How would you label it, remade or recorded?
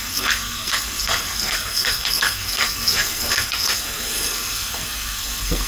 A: remade